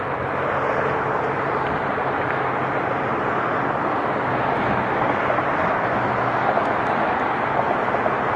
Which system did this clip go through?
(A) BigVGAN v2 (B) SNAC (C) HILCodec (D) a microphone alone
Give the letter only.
D